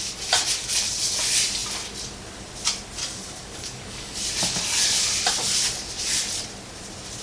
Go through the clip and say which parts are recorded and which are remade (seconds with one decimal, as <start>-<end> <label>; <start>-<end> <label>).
0.0-3.0 recorded; 3.0-4.3 remade; 4.3-7.2 recorded